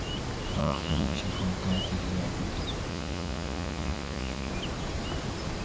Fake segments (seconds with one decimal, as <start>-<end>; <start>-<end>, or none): 0.6-1.2; 2.9-4.5